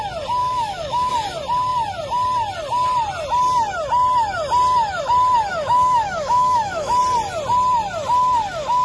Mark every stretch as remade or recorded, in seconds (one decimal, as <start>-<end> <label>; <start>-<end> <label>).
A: 0.0-0.4 recorded; 0.4-1.1 remade; 1.1-5.5 recorded; 5.5-7.0 remade; 7.0-8.8 recorded